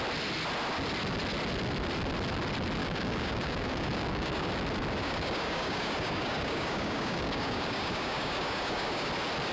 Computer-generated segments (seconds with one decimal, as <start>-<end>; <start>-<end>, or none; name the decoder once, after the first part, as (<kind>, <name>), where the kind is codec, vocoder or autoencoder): 2.8-4.5 (codec, DAC); 5.0-9.1